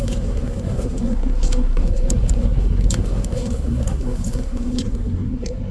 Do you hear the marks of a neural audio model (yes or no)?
yes